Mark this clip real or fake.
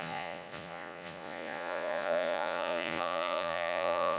fake